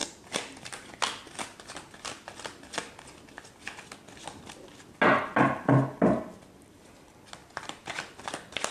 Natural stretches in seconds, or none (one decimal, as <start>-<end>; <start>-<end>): 1.0-7.4; 8.0-8.7